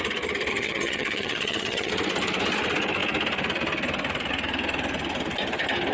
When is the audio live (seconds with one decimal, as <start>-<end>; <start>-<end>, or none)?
0.0-0.5; 1.9-5.9